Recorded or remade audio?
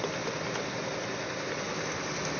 recorded